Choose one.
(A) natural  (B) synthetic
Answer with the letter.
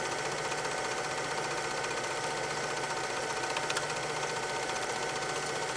A